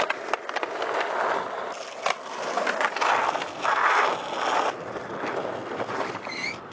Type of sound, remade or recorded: recorded